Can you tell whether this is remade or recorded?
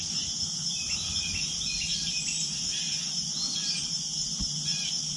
recorded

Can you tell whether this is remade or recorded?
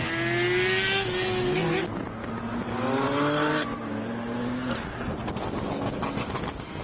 recorded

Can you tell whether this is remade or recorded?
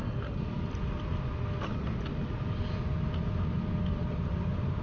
recorded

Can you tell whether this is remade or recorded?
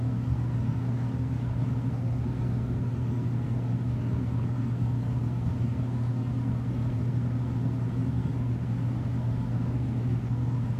remade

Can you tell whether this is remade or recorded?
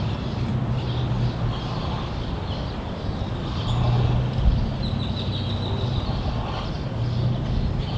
recorded